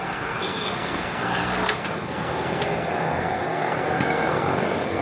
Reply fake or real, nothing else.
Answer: fake